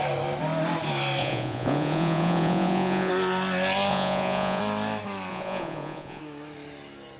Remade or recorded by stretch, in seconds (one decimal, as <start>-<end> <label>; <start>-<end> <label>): 0.0-1.2 recorded; 1.2-3.1 remade; 3.1-3.9 recorded; 3.9-4.6 remade; 4.6-5.3 recorded; 5.3-6.2 remade; 6.2-7.2 recorded